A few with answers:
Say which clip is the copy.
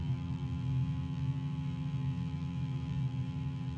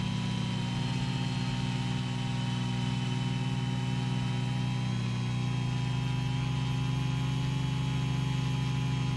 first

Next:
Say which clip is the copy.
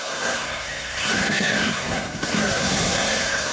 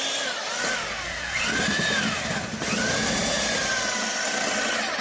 first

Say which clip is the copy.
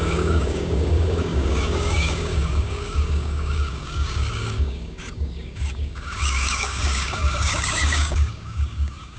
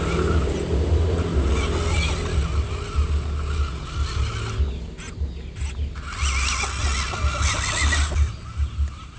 first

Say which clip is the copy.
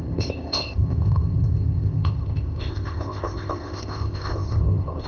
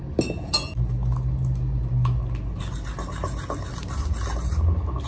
first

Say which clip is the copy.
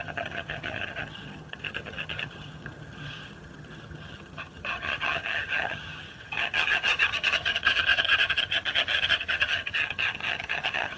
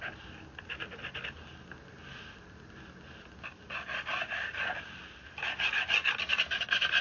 first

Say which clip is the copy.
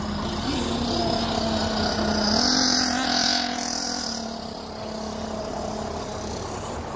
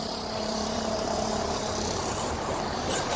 second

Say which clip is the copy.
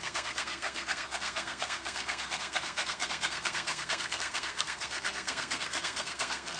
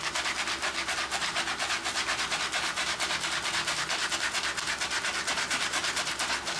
first